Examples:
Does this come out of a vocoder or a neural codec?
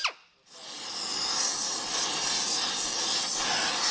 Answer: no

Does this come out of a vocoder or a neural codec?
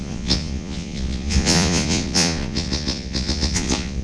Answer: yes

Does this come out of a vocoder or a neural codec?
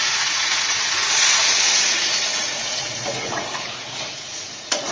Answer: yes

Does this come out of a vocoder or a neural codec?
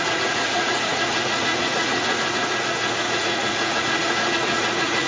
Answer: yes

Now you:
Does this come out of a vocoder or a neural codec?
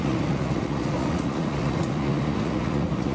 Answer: yes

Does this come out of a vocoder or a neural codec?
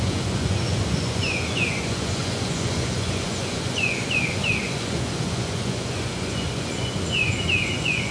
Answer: yes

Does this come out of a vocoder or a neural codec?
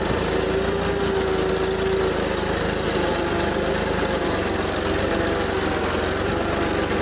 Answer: no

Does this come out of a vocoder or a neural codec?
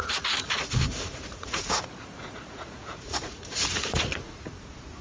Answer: yes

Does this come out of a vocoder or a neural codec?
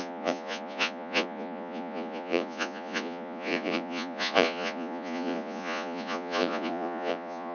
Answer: yes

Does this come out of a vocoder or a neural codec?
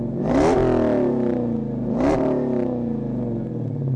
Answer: no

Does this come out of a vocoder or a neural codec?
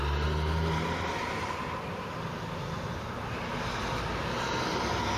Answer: no